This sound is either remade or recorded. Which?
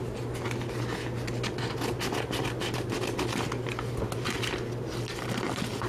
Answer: recorded